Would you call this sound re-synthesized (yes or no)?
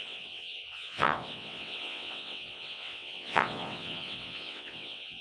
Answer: yes